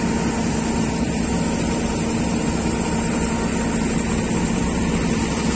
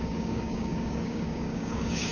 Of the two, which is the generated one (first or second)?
second